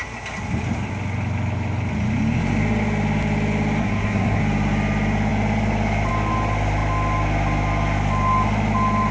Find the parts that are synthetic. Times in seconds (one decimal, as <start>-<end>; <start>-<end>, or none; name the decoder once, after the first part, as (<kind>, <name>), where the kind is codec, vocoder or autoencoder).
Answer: 3.8-4.4 (codec, SNAC)